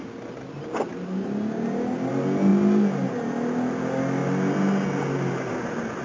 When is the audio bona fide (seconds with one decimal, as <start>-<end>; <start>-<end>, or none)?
0.0-6.0